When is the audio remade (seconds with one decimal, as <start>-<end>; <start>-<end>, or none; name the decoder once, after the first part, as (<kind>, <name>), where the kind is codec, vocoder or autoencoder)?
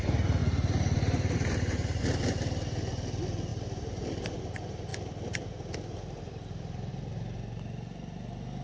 0.4-2.0 (vocoder, BigVGAN v2); 3.5-4.4